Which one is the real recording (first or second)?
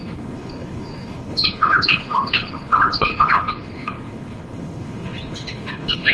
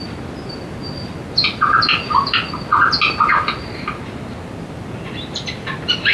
second